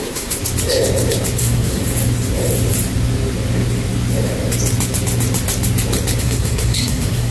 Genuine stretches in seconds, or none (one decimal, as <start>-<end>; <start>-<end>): 0.4-1.4; 1.8-6.2